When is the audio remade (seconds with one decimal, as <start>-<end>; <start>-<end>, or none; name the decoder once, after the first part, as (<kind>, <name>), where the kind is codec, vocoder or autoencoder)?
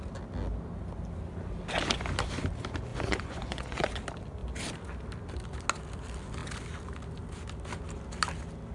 2.9-3.9 (vocoder, Vocos)